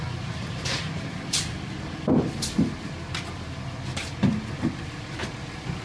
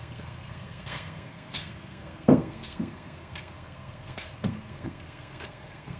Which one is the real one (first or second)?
first